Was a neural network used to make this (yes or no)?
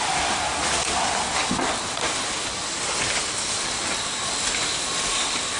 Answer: no